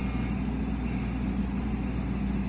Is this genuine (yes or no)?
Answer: yes